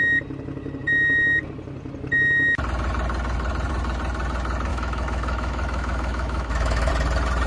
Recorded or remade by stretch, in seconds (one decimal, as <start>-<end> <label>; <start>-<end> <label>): 0.0-4.7 recorded; 4.7-6.9 remade; 6.9-7.5 recorded